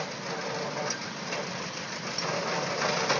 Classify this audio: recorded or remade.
recorded